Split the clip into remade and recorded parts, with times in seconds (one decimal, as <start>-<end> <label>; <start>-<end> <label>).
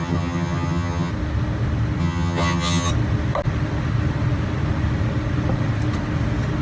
0.0-1.1 remade; 1.1-2.0 recorded; 2.0-2.9 remade; 2.9-6.6 recorded